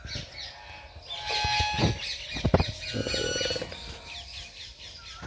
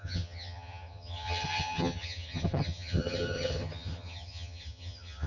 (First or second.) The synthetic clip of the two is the second